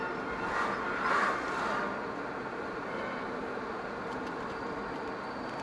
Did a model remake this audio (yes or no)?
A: no